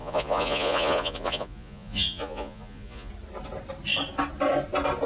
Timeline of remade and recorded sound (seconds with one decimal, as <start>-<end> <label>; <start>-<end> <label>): 0.0-3.1 remade; 3.1-5.1 recorded